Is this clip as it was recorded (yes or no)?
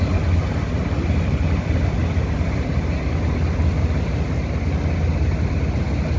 yes